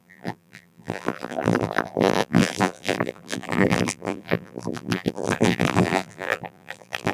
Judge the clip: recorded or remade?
remade